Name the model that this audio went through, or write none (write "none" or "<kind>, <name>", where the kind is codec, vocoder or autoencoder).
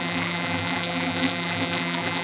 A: vocoder, BigVGAN v2